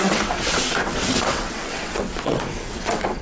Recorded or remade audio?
remade